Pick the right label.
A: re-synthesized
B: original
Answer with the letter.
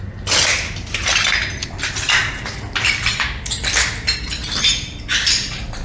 B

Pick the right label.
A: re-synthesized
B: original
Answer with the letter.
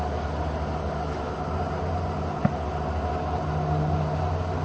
B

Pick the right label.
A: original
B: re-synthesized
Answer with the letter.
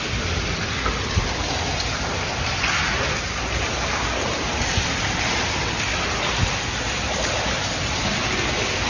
A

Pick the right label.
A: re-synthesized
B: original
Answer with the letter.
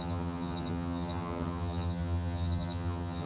A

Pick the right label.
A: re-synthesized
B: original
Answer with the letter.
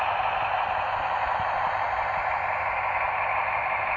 B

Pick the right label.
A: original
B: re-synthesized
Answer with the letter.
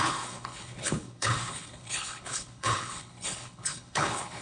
B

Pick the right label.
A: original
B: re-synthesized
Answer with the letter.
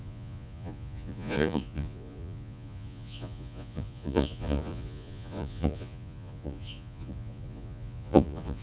B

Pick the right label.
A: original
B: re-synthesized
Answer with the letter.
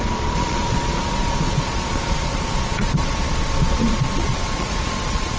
B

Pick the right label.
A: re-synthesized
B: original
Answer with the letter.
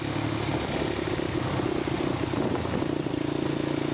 B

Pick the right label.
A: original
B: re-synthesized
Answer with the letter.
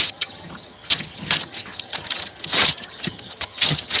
B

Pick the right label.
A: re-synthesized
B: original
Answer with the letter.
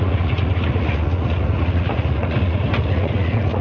A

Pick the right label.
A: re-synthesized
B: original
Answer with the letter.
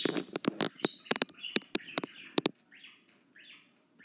B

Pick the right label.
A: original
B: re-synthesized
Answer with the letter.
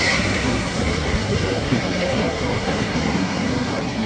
B